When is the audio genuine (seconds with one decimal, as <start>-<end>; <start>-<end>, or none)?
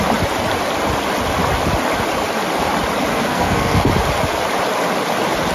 0.0-3.1; 3.9-5.5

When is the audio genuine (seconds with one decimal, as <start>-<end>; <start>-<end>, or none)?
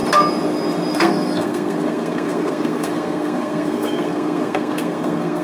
0.0-0.9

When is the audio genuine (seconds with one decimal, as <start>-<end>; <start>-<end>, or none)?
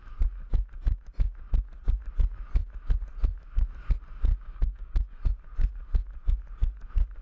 0.0-4.3; 5.2-7.2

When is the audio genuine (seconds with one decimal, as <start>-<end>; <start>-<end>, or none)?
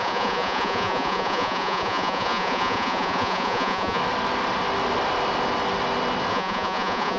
4.0-6.3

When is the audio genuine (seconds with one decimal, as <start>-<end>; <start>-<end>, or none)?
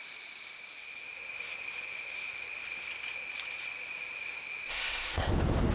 0.0-4.7; 5.3-5.7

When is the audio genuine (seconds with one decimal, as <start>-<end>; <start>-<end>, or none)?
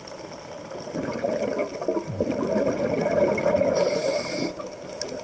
0.0-5.2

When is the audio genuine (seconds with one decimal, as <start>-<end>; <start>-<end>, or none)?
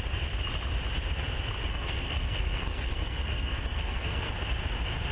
0.0-1.7; 4.3-5.1